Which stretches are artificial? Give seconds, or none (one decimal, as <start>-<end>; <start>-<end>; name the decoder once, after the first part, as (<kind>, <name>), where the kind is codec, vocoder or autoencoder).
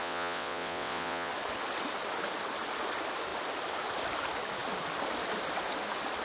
0.0-1.3 (vocoder, WaveNeXt)